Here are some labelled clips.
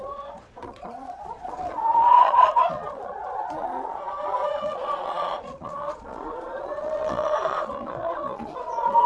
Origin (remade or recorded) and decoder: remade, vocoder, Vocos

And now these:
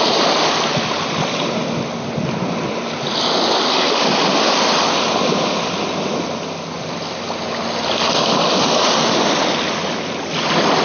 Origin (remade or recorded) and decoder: recorded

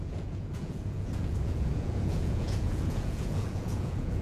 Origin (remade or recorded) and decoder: remade, vocoder, Vocos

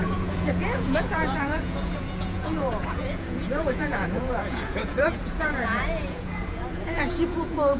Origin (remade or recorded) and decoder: remade, vocoder, Vocos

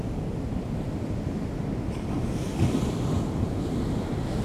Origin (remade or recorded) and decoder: recorded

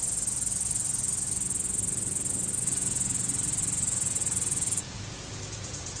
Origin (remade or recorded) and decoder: remade, vocoder, Vocos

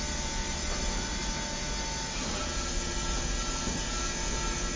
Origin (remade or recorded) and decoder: recorded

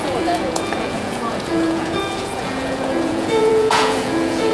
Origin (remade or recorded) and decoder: remade, vocoder, Vocos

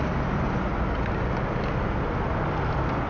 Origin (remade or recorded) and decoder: recorded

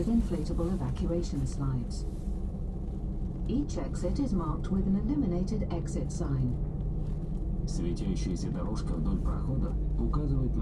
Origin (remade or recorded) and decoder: recorded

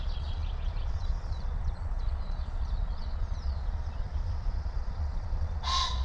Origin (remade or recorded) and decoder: remade, vocoder, Vocos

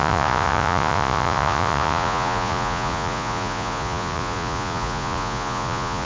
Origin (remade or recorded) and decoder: remade, vocoder, Vocos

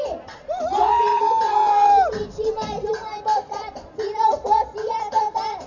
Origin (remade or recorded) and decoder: recorded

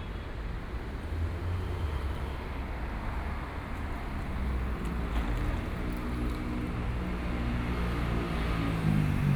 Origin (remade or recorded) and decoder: recorded